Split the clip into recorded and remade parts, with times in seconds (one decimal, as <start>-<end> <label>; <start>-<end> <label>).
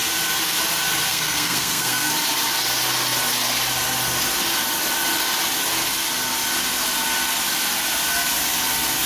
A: 0.0-1.1 recorded; 1.1-2.1 remade; 2.1-9.1 recorded